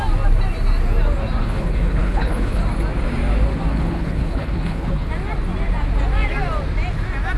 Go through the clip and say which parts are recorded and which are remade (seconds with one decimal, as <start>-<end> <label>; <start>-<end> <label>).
0.0-1.4 recorded; 1.4-2.6 remade; 2.6-3.7 recorded; 3.7-5.1 remade; 5.1-7.4 recorded